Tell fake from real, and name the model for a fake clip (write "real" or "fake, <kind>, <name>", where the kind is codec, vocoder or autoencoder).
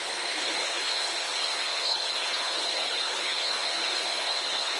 fake, codec, HILCodec